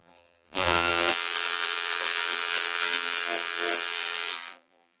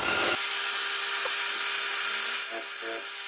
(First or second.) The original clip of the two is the second